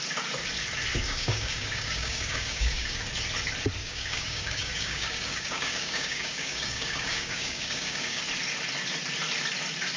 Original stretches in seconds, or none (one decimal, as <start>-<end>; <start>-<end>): 0.0-0.9; 3.0-3.8; 8.2-10.0